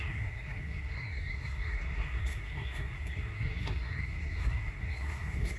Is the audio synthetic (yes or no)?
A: yes